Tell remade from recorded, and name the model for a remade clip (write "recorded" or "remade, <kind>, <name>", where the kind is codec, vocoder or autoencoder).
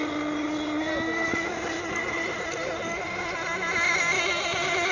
recorded